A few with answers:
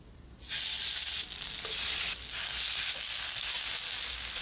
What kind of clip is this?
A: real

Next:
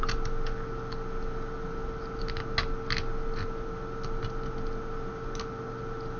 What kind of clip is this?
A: real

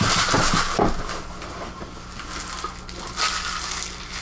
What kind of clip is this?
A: real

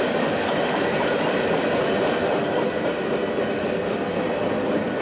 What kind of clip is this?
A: real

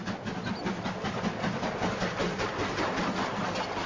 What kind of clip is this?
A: real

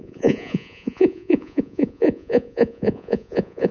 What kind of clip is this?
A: fake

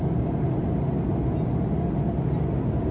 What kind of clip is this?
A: real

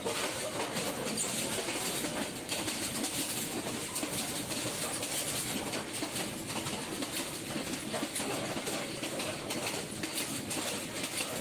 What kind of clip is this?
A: real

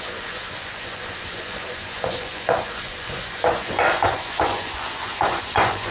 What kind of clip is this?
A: fake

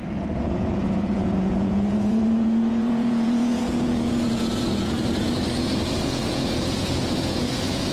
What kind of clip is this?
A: fake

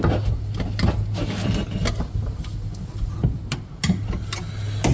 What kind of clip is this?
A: real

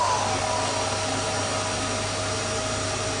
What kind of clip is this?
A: real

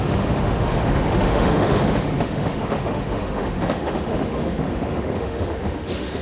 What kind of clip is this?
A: fake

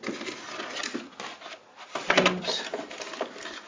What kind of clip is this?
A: real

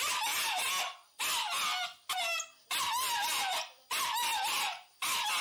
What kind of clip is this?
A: real